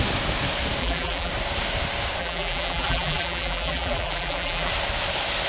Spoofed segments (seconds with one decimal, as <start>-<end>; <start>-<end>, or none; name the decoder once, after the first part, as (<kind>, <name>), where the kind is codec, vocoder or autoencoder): 0.8-1.3 (vocoder, BigVGAN v2); 2.2-4.7